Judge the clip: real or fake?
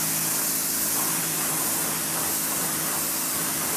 real